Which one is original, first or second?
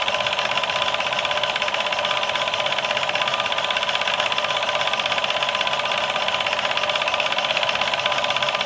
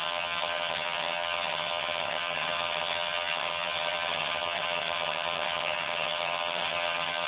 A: first